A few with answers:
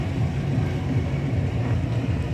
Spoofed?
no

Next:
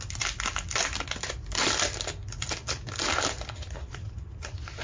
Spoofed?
no